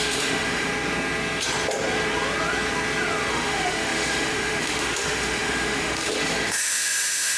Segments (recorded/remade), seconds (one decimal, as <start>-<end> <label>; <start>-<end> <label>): 0.0-0.7 remade; 0.7-3.3 recorded; 3.3-7.4 remade